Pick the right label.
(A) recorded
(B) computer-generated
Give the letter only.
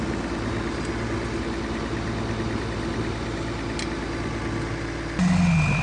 A